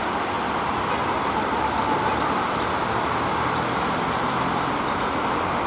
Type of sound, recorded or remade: recorded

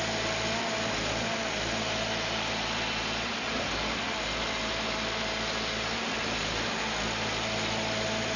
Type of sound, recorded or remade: recorded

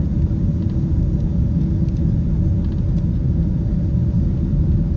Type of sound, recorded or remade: recorded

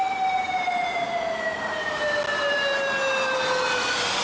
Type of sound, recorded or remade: recorded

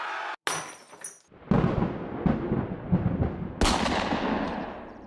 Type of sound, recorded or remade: recorded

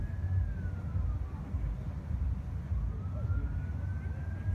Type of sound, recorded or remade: recorded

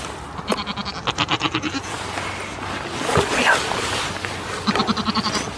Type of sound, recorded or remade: recorded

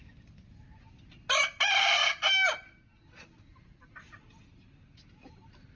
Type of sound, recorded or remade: recorded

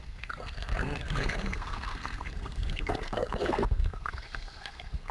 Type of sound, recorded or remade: remade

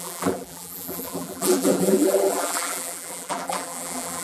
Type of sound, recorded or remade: remade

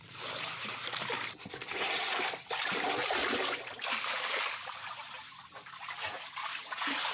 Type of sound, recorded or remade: recorded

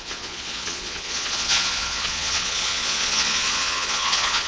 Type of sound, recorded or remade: remade